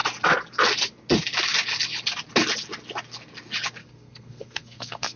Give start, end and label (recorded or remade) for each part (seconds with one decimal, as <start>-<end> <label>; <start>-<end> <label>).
0.0-3.8 recorded; 3.8-5.2 remade